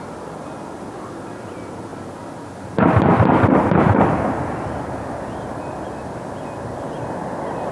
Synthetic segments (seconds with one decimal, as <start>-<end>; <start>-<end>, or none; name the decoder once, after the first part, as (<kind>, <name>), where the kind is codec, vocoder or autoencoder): none